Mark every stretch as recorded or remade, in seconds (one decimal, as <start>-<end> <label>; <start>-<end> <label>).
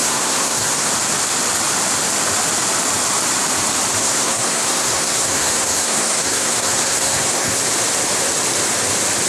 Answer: 0.0-0.9 remade; 0.9-4.0 recorded; 4.0-7.6 remade; 7.6-9.3 recorded